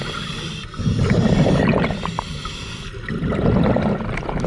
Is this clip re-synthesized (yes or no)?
no